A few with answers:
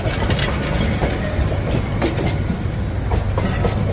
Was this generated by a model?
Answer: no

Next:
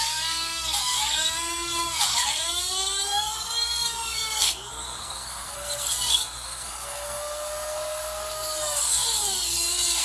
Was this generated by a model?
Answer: yes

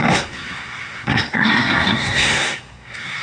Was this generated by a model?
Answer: yes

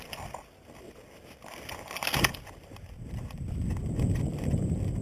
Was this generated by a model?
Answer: no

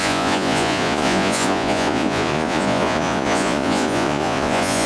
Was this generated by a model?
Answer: yes